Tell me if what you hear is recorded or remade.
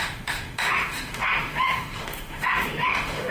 remade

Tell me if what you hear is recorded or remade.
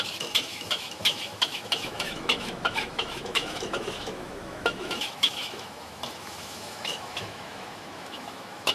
remade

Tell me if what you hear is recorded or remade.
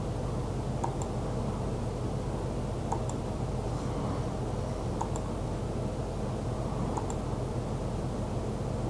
recorded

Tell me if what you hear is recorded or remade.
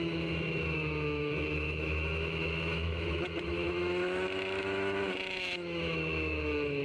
remade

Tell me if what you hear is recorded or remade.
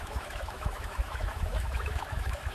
remade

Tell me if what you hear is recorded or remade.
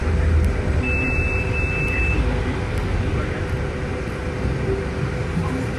recorded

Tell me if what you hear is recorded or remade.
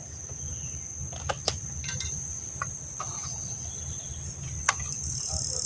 recorded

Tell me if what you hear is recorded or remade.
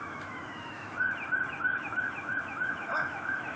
remade